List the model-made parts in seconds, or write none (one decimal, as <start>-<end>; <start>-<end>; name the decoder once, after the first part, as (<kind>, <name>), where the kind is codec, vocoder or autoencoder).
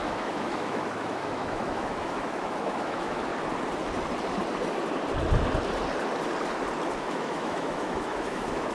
0.0-3.3 (autoencoder, DAC-VAE); 7.0-8.7